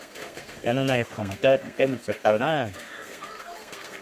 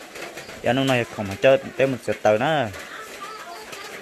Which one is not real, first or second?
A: first